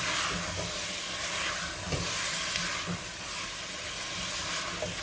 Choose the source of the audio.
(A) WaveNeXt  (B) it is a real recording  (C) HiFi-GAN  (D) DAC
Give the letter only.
B